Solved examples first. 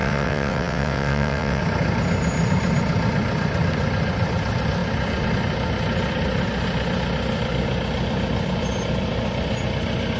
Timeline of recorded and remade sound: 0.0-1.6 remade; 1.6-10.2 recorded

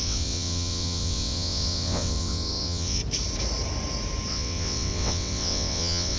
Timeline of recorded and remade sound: 0.0-3.0 remade; 3.0-4.3 recorded; 4.3-6.2 remade